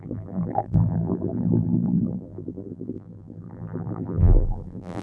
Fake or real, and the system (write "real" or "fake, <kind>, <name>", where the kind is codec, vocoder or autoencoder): fake, vocoder, BigVGAN v2